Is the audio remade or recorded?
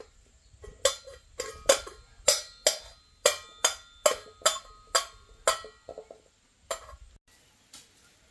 recorded